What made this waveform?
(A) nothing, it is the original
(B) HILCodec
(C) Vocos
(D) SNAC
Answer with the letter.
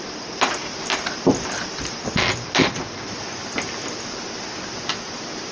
A